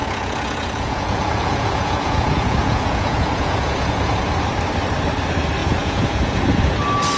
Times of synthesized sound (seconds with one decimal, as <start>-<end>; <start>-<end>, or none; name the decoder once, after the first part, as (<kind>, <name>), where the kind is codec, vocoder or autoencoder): 0.0-4.3 (vocoder, Vocos); 5.6-6.4

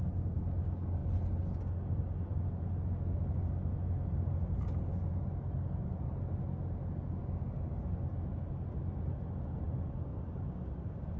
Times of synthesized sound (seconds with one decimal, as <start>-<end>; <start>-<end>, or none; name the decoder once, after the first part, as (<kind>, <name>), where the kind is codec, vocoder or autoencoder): none

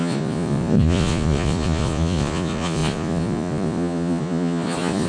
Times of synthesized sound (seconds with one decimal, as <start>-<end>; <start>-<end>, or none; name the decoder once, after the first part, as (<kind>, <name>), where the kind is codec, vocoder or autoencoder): 0.0-5.1 (vocoder, Vocos)

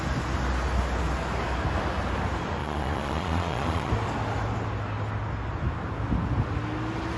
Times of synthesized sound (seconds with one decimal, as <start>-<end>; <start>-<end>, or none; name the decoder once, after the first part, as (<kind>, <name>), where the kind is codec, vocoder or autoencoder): 2.6-3.9 (vocoder, Vocos)

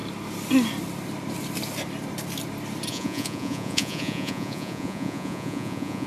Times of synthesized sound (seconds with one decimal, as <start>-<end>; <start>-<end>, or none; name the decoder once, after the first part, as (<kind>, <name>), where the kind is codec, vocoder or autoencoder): 2.9-6.1 (vocoder, Vocos)